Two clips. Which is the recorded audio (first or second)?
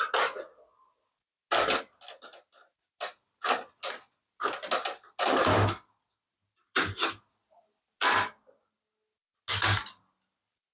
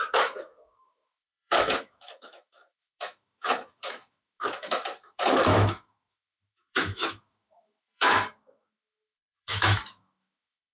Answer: first